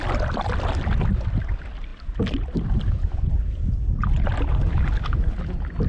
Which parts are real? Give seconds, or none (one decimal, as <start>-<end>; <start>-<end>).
0.0-5.9